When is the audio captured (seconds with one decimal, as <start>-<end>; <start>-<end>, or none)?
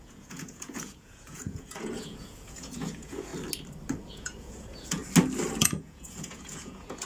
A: 3.3-4.1; 5.0-5.6